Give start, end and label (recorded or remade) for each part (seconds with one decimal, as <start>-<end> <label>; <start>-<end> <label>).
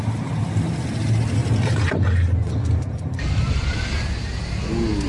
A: 0.0-5.1 recorded